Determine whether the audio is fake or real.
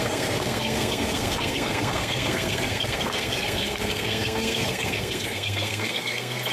fake